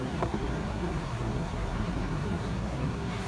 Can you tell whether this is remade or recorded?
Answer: remade